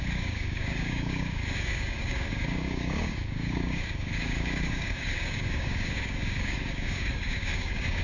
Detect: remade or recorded remade